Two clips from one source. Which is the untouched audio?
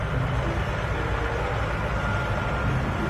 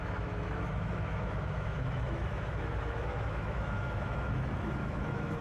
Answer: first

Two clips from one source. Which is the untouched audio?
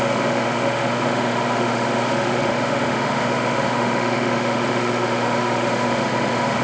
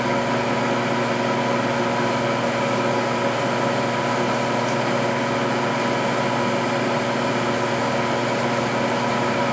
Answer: second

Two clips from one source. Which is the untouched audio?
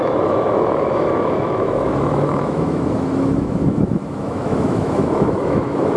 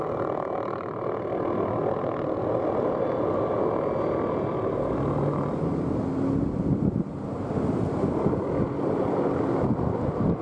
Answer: second